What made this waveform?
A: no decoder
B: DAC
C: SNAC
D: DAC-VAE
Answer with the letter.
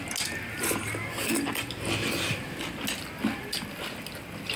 A